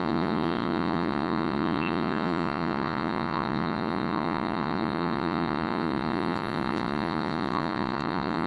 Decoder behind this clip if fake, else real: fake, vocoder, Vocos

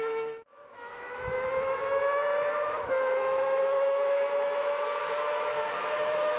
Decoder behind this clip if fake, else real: fake, autoencoder, DAC-VAE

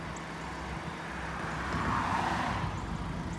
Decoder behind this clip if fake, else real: real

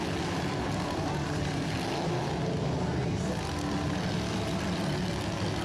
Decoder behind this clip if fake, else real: real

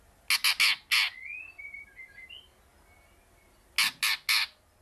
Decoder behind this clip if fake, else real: real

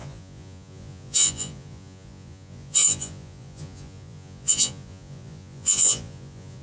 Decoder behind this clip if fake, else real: fake, vocoder, Vocos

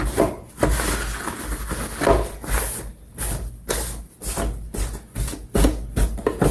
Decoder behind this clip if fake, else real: real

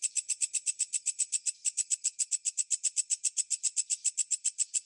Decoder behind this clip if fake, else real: real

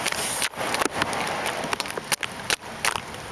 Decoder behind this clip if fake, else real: real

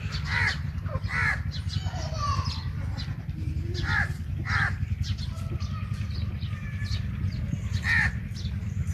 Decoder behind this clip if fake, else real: real